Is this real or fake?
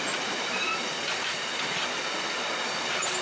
real